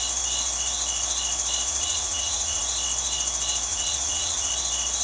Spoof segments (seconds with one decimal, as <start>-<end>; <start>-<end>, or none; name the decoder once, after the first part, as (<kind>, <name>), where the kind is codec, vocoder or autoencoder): 1.7-2.6 (vocoder, Vocos); 3.7-4.5